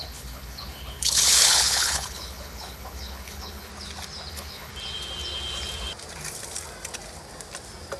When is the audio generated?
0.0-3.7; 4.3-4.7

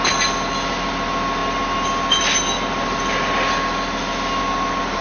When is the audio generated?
none

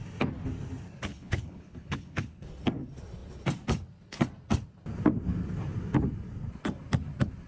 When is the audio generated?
1.1-2.5

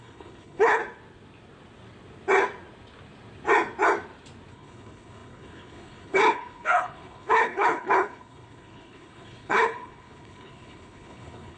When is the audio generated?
0.0-0.8; 4.5-11.6

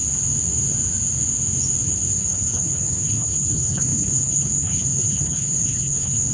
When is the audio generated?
2.1-6.3